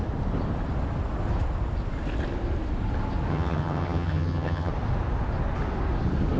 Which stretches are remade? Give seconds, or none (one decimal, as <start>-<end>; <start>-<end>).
3.3-4.7